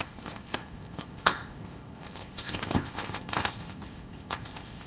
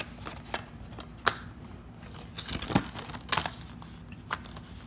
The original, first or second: second